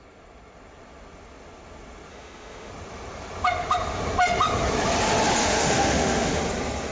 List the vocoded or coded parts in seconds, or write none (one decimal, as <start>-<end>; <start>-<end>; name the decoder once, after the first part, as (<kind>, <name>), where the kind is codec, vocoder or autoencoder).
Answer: 2.1-2.7 (autoencoder, DAC-VAE); 5.4-6.4